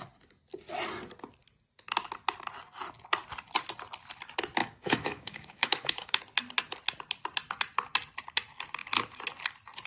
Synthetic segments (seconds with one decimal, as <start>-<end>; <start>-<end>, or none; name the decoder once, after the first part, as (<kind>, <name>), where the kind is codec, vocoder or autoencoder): 4.6-6.2 (autoencoder, DAC-VAE)